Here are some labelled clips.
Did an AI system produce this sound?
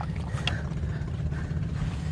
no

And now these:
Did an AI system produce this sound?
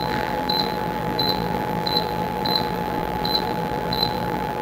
yes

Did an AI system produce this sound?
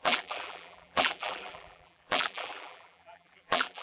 yes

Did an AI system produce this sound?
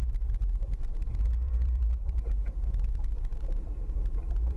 yes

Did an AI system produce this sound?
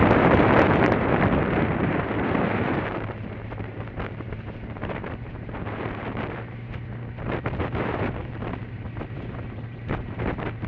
yes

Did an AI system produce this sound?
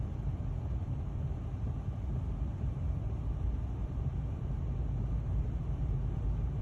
yes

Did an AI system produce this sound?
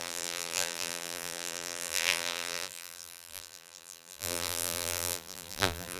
yes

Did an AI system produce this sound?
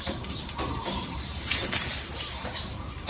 yes